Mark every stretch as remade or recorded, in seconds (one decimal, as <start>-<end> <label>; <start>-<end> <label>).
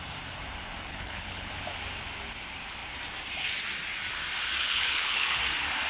0.0-0.9 recorded; 0.9-1.5 remade; 1.5-4.6 recorded; 4.6-5.4 remade; 5.4-5.9 recorded